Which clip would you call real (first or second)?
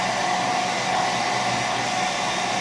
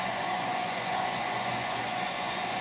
first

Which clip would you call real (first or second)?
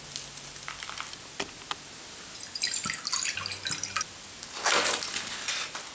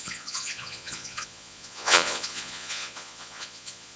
first